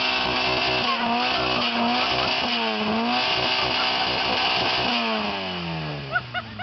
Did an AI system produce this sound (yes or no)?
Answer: no